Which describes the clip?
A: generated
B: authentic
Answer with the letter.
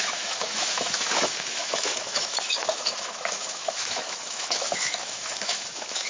A